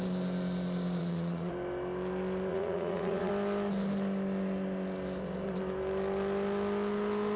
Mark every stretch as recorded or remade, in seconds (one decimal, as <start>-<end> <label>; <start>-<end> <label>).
0.0-1.0 recorded; 1.0-1.5 remade; 1.5-2.5 recorded; 2.5-3.3 remade; 3.3-7.4 recorded